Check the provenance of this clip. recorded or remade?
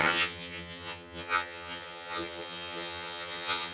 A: remade